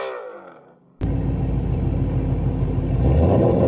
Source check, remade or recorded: recorded